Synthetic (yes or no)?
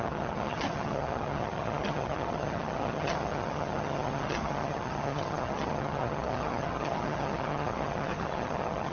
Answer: yes